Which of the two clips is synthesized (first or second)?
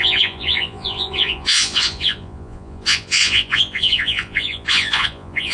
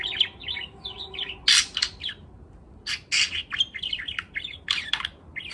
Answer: first